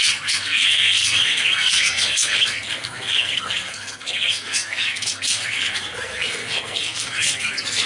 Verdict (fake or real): fake